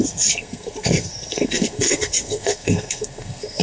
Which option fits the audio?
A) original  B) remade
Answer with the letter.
B